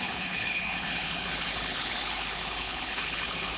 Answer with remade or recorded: remade